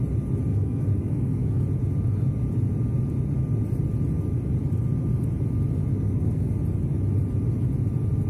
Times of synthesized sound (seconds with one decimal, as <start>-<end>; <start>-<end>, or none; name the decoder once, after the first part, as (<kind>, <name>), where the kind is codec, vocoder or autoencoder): 0.5-1.6 (codec, SNAC); 5.9-6.5